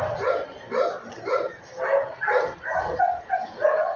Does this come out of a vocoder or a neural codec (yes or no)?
no